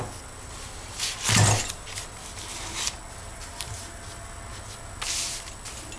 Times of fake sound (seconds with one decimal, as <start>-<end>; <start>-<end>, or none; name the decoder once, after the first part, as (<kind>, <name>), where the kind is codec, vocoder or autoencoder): 3.3-4.0 (vocoder, BigVGAN v2)